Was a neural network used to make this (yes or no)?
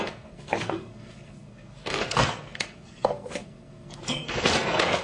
yes